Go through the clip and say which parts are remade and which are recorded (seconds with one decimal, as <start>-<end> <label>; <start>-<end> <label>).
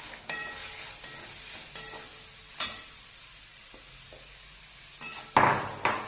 0.0-6.1 recorded